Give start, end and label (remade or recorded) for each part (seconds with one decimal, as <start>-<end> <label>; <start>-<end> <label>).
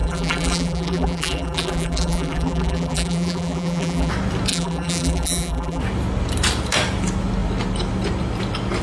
0.0-4.1 remade; 4.1-4.5 recorded; 4.5-5.8 remade; 5.8-8.8 recorded